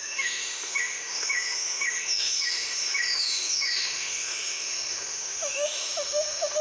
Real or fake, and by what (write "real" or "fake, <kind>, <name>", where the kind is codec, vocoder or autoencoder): fake, autoencoder, DAC-VAE